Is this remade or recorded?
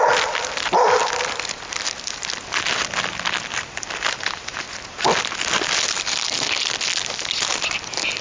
recorded